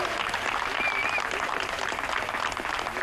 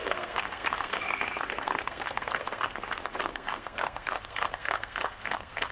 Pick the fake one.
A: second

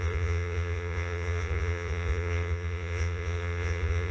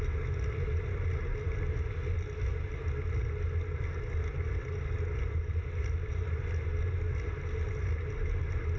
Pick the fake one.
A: first